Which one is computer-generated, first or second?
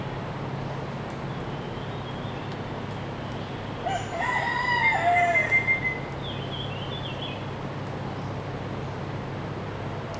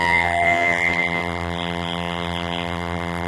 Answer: second